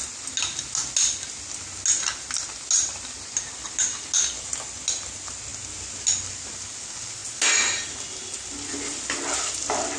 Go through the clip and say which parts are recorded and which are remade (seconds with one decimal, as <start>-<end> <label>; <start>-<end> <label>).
0.0-10.0 recorded